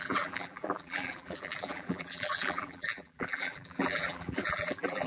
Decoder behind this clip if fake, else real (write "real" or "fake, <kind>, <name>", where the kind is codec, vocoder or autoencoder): fake, vocoder, BigVGAN v2